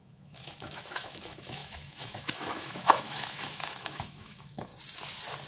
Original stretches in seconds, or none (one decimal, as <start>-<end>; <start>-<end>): 4.7-5.5